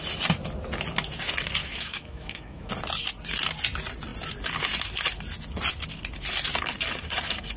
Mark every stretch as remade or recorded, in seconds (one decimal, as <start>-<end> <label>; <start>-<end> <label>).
0.0-1.6 recorded; 1.6-2.7 remade; 2.7-7.6 recorded